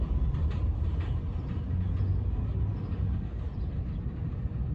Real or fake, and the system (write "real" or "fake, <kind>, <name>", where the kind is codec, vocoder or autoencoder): real